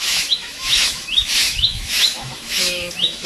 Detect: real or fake fake